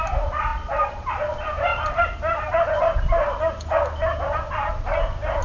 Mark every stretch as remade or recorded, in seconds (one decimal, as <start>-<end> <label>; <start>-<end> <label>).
0.0-5.4 recorded